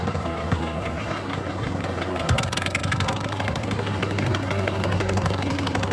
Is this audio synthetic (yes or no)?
yes